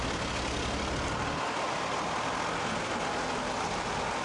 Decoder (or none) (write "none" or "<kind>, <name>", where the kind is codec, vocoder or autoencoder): none